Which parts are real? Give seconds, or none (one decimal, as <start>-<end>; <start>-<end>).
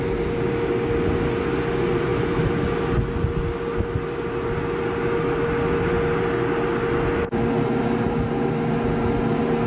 0.0-9.7